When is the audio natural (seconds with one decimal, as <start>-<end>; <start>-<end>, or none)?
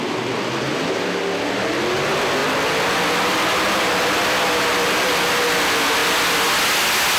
0.0-7.2